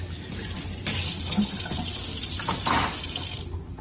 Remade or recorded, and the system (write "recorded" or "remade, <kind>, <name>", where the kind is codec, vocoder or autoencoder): recorded